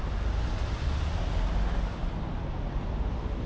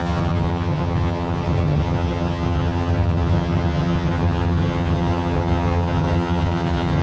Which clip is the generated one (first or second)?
second